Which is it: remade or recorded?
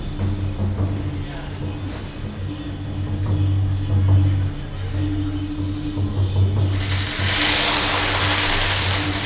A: recorded